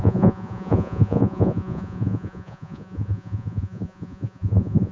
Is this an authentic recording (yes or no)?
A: no